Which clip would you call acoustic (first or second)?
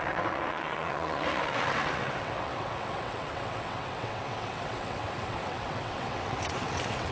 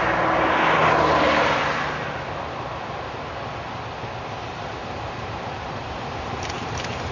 second